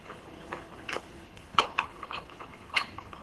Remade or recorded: remade